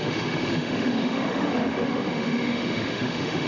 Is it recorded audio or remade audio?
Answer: remade